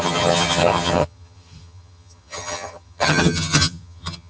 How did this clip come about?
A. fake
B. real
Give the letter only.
A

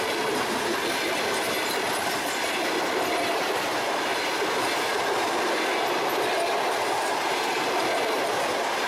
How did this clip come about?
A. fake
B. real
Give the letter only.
B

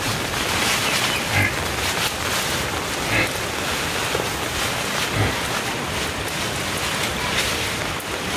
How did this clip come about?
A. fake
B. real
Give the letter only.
B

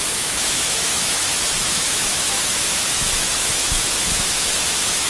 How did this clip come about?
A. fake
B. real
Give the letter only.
A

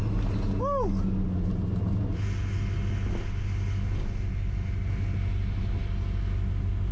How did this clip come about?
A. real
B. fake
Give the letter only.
A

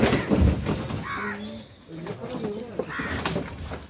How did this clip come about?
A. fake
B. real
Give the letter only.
B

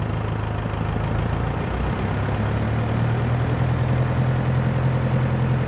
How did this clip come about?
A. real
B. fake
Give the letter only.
A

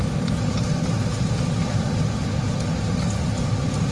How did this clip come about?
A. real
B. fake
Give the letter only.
A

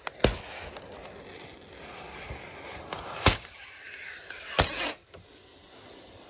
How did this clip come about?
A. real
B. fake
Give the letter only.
A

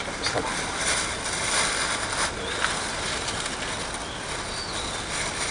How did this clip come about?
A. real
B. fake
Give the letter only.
A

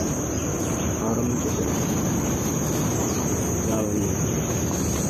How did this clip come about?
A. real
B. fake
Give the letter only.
B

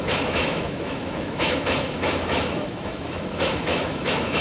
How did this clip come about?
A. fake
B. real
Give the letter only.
A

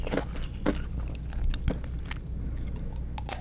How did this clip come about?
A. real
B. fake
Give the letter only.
A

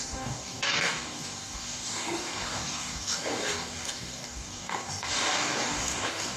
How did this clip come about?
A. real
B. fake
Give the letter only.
B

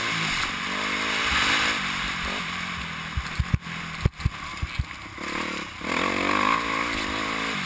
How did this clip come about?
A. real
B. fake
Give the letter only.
A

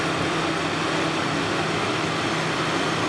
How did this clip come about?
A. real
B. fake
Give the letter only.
A